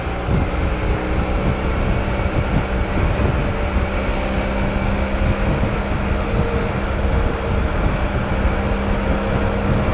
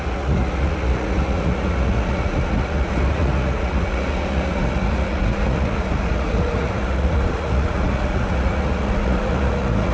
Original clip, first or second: first